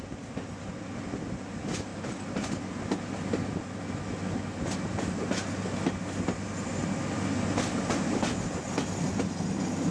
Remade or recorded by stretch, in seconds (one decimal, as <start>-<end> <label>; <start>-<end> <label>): 0.0-9.9 recorded